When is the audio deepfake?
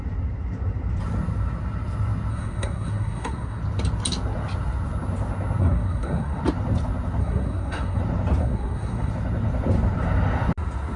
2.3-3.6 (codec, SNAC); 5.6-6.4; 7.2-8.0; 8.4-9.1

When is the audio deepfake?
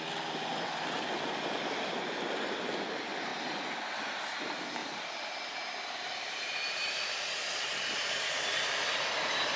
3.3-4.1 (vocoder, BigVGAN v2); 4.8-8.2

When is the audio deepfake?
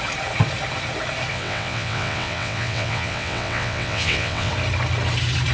1.3-4.5 (vocoder, WaveNeXt)